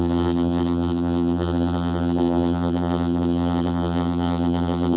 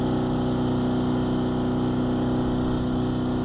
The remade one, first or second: first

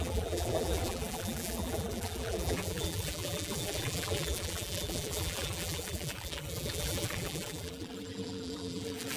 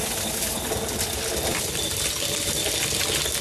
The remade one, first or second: first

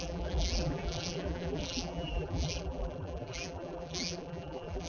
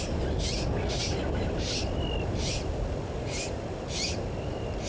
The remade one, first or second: first